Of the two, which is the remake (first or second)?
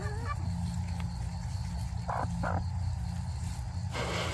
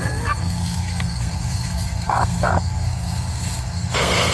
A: second